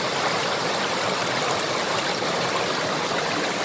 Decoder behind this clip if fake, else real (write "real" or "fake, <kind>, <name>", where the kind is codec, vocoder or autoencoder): real